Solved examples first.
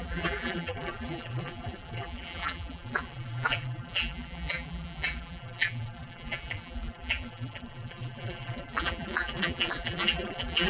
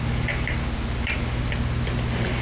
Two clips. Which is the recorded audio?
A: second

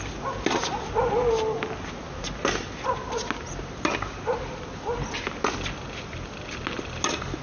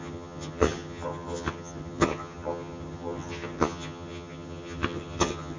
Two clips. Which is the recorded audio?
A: first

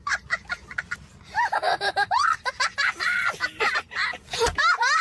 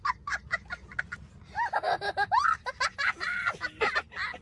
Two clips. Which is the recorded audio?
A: second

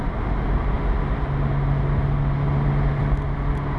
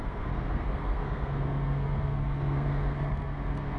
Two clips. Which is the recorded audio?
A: first